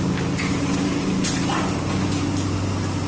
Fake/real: real